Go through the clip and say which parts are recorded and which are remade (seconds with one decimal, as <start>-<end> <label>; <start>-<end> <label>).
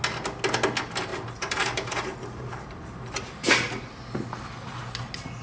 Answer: 0.0-1.1 recorded; 1.1-3.9 remade; 3.9-5.4 recorded